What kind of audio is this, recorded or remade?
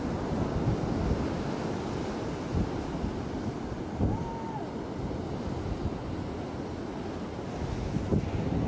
recorded